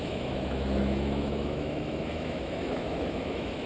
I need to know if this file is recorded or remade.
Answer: remade